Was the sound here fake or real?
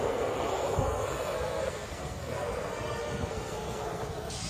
fake